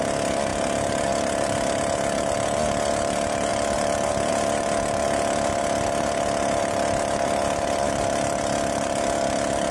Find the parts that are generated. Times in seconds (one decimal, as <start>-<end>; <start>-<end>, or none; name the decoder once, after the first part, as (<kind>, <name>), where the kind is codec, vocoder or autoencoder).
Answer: none